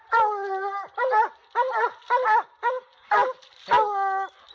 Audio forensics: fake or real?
real